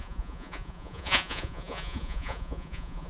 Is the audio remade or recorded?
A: remade